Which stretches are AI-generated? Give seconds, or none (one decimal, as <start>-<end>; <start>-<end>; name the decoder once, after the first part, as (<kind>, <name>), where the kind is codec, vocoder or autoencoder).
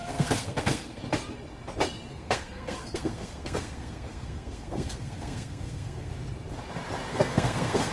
0.0-1.0 (codec, SNAC); 2.1-6.1; 7.1-7.9